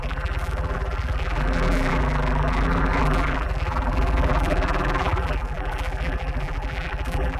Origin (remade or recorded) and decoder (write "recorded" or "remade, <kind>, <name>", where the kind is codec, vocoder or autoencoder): remade, vocoder, BigVGAN v2